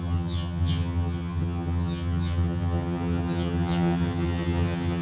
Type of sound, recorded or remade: remade